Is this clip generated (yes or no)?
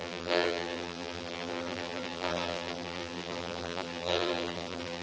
yes